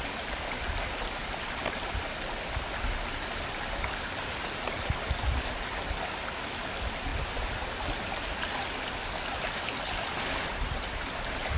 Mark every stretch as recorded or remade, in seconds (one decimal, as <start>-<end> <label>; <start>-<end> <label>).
0.0-11.6 recorded